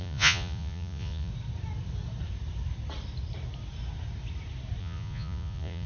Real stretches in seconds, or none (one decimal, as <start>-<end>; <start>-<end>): 1.3-4.8